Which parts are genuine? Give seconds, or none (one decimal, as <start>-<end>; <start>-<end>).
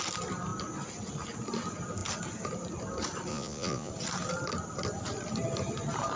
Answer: 0.0-3.3; 3.9-6.2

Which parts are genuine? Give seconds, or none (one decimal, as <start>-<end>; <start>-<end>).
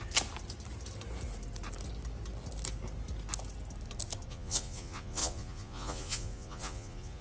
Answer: 0.0-4.3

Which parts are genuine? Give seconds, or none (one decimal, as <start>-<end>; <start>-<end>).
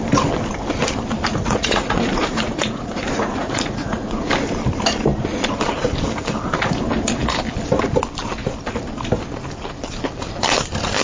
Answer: 0.0-1.3; 4.3-11.0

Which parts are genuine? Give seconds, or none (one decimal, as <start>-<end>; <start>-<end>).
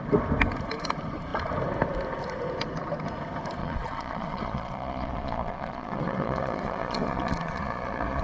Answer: 0.0-3.6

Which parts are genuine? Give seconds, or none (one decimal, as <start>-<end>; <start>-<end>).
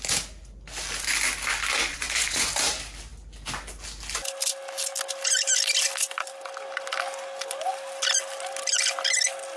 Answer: 0.0-1.9; 2.5-9.6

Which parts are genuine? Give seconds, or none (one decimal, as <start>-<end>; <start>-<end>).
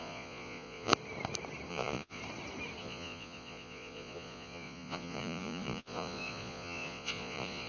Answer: 0.9-1.7; 2.2-2.8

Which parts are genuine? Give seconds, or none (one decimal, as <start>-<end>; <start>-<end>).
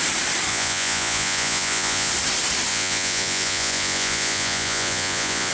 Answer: 0.0-0.5; 2.1-2.7